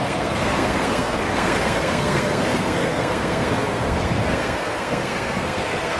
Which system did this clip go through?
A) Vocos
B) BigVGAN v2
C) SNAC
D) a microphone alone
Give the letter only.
C